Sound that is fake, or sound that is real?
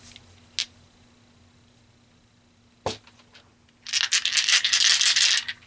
real